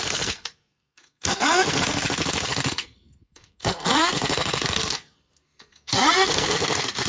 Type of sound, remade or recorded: remade